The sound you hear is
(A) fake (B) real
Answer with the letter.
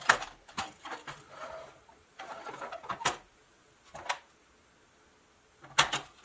B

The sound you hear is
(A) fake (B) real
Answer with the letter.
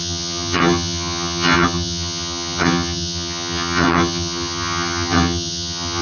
A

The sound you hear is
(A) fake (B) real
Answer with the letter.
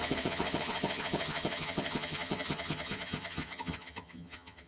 A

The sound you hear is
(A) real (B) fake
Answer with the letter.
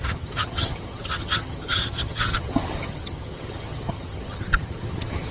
B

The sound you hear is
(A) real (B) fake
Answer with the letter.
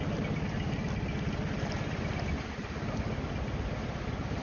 A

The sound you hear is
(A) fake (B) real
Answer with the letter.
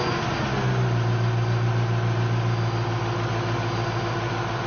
B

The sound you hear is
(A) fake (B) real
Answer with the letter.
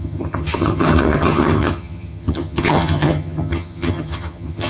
A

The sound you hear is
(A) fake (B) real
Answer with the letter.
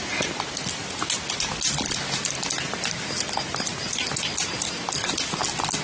B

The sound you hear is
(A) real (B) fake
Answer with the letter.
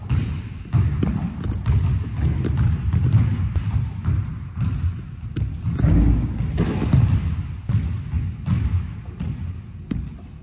A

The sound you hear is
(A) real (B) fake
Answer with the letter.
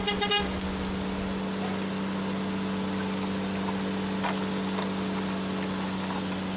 A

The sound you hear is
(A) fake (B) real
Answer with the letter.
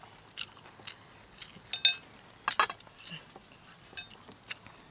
B